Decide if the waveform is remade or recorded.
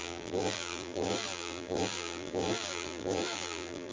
remade